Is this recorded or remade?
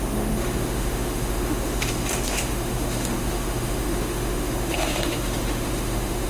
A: remade